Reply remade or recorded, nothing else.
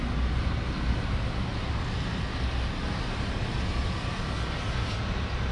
recorded